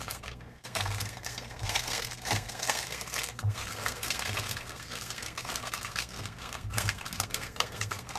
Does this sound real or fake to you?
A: fake